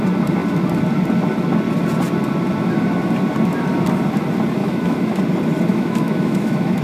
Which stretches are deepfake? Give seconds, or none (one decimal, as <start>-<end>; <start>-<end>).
4.6-5.2; 5.7-6.8